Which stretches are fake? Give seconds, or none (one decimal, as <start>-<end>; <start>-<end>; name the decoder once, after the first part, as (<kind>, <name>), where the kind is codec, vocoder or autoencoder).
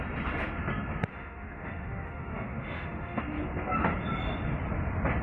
1.1-3.2 (autoencoder, DAC-VAE)